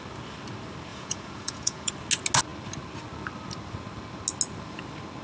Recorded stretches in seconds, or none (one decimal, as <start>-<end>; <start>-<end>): 0.0-0.9; 1.9-5.2